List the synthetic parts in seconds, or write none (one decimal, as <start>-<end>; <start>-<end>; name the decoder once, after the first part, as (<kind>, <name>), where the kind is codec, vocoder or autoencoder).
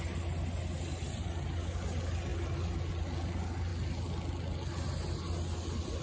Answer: none